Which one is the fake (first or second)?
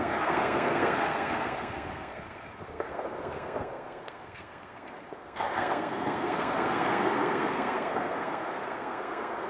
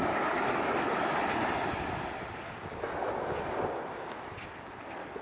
first